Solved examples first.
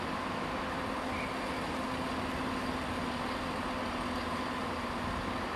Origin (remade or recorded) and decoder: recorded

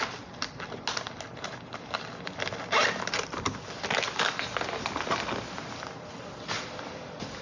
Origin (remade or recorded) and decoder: recorded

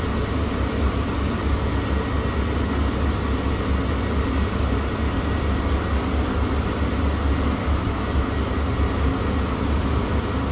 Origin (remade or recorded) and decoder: recorded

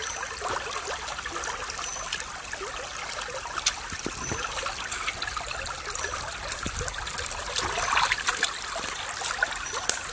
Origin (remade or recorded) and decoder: recorded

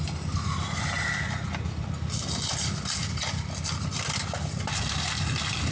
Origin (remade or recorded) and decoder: recorded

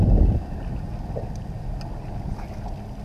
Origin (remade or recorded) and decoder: recorded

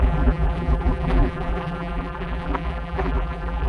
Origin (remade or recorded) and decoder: remade, vocoder, BigVGAN v2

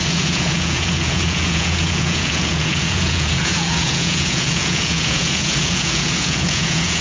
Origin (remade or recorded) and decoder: remade, vocoder, Vocos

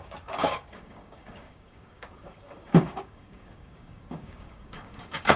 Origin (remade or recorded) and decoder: remade, codec, DAC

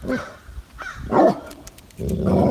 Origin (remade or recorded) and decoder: recorded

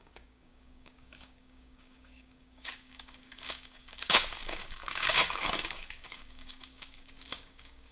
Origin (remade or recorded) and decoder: remade, codec, DAC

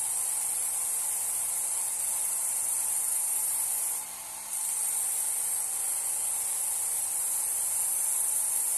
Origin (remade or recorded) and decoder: recorded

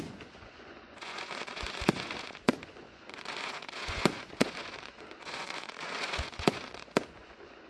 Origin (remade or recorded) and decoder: remade, vocoder, Vocos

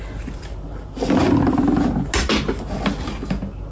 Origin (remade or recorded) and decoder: recorded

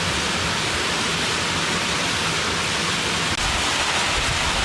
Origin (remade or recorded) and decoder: recorded